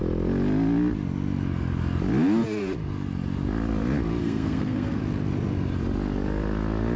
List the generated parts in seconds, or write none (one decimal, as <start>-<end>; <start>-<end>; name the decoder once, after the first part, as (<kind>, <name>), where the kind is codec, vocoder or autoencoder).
4.2-5.0 (codec, SNAC)